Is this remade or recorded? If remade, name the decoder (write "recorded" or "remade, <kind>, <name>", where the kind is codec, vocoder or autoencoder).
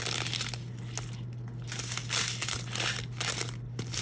recorded